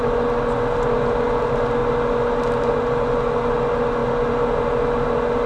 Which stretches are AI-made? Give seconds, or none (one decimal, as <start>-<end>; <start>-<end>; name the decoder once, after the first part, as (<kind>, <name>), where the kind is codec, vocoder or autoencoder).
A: none